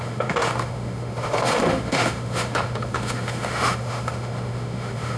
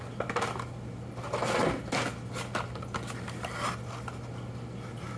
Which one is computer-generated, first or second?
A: first